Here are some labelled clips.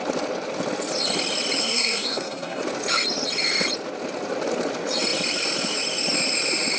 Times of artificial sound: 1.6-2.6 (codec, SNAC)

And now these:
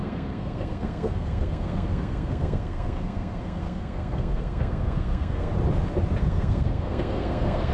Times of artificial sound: 0.0-5.5 (codec, SNAC); 6.2-7.7

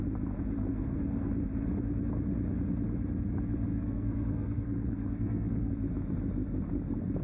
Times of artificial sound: 0.7-1.3 (codec, SNAC); 3.7-5.7

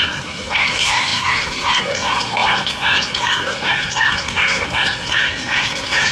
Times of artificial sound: 0.0-6.1 (codec, SNAC)

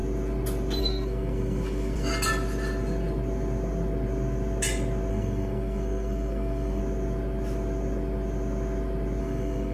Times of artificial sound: 0.8-2.1 (codec, SNAC); 5.1-6.8; 9.2-9.7

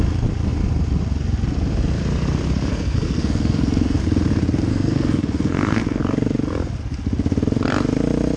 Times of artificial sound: 2.7-4.0 (codec, SNAC); 4.7-6.0